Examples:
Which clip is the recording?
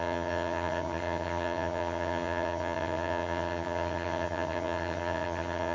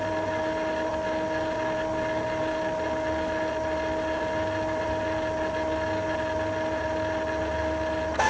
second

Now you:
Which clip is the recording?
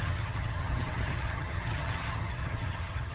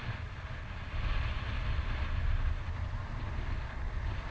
second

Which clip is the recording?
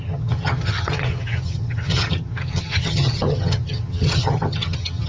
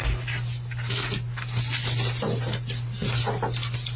second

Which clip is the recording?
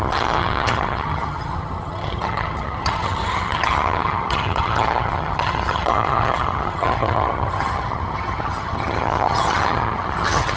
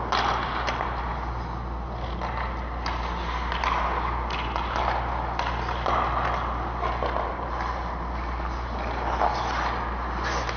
second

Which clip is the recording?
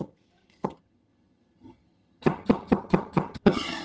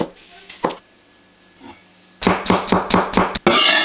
second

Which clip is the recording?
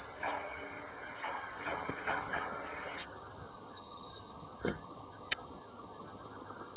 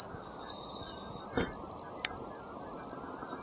second